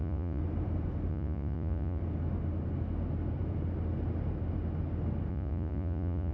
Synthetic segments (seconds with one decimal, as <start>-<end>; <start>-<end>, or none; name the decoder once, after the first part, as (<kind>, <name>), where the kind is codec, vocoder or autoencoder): 0.0-0.4 (vocoder, Vocos); 1.1-2.0; 5.3-6.3